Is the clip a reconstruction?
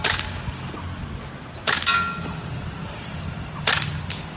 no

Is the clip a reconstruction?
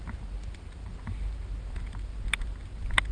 no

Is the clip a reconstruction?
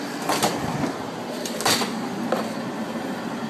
no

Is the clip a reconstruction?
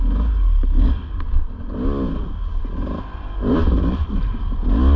no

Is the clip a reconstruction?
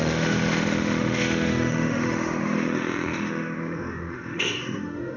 yes